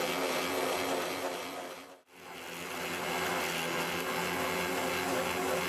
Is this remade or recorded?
recorded